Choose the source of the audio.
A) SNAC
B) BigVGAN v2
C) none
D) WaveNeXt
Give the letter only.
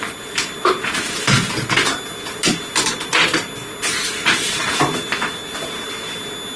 C